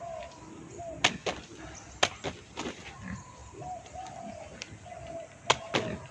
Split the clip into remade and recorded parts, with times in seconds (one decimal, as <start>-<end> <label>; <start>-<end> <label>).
0.0-6.1 recorded